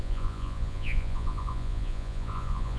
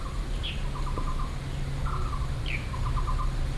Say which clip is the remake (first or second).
first